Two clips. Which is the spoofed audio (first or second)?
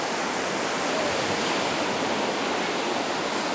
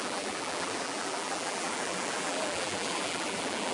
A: second